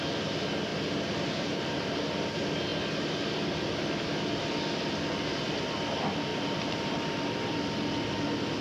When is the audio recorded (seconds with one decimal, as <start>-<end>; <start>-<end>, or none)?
0.0-0.7; 2.0-6.3; 7.6-8.6